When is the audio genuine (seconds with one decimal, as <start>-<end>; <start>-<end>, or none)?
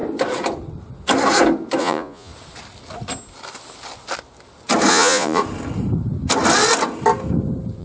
0.0-1.8; 2.3-4.9; 5.4-7.8